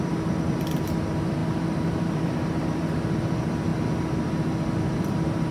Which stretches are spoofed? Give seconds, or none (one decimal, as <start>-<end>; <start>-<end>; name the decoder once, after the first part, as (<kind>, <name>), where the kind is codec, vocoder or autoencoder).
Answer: 0.0-3.7 (vocoder, BigVGAN v2); 4.8-5.5